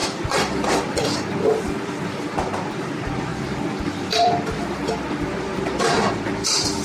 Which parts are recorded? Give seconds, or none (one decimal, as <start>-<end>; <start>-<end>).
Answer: none